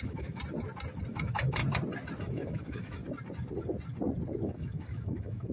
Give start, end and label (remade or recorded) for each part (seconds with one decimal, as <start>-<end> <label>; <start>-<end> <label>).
0.0-0.4 remade; 0.4-1.1 recorded; 1.1-1.6 remade; 1.6-2.2 recorded; 2.2-3.0 remade; 3.0-4.4 recorded; 4.4-5.5 remade